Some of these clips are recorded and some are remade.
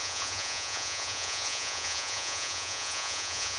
remade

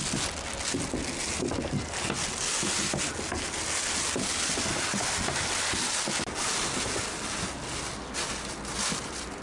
recorded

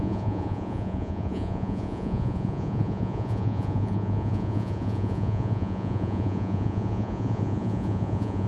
remade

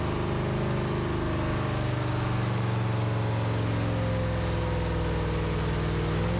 recorded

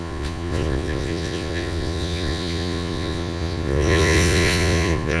remade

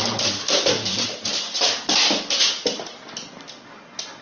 recorded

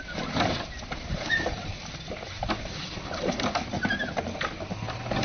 recorded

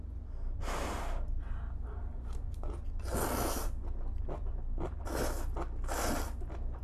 recorded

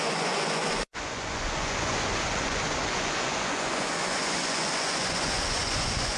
remade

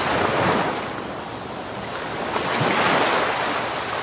recorded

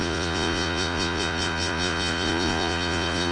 remade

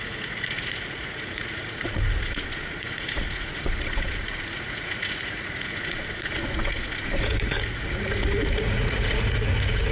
remade